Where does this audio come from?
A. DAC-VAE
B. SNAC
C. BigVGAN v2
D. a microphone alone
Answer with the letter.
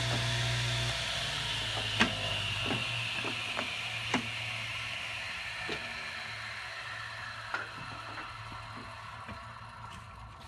D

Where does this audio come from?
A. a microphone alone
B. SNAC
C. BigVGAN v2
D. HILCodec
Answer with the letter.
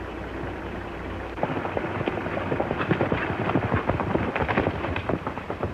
C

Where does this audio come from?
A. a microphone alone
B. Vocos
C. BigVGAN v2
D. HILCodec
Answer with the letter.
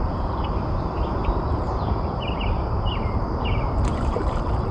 C